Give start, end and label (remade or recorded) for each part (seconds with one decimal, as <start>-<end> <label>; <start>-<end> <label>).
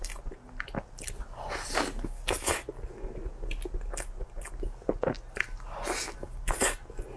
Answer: 0.0-7.2 recorded